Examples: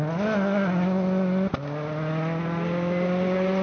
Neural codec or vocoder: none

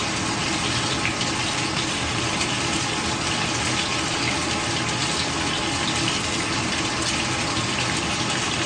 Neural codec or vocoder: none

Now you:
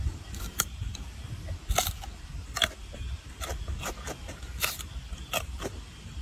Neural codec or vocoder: vocoder, BigVGAN v2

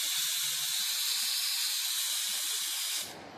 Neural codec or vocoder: none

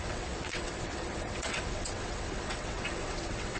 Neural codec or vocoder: vocoder, WaveNeXt